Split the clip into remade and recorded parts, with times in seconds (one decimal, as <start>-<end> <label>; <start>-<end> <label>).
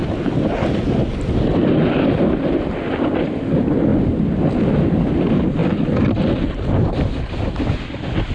0.0-8.3 recorded